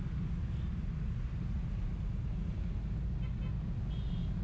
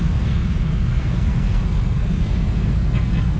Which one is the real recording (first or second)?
first